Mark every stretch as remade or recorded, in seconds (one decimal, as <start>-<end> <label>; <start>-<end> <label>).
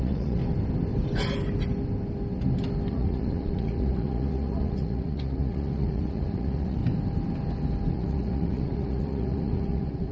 0.0-0.4 remade; 0.4-2.9 recorded; 2.9-6.8 remade; 6.8-7.9 recorded; 7.9-10.1 remade